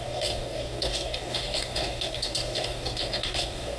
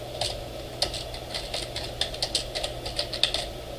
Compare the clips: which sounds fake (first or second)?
first